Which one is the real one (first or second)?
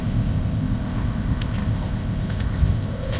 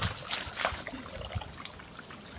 second